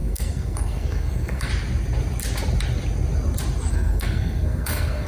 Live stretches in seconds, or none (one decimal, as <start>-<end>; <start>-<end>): 1.5-3.7